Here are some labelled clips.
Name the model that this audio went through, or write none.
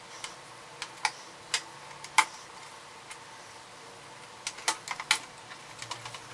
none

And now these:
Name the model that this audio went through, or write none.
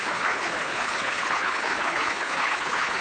codec, HILCodec